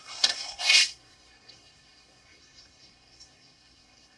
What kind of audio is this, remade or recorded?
remade